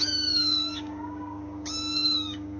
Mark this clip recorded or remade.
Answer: remade